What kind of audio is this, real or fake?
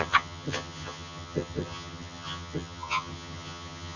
fake